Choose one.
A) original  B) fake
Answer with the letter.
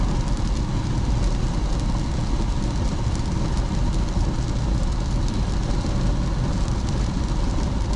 A